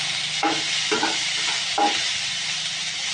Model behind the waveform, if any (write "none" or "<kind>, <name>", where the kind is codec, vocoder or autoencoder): none